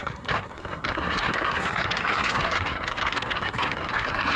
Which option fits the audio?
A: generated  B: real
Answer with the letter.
A